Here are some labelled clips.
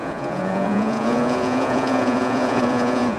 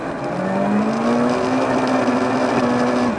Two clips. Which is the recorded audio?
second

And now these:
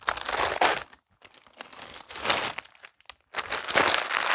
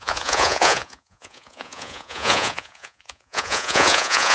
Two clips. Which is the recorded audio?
first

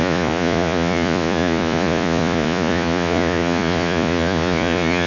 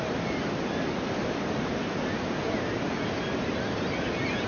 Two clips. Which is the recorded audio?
second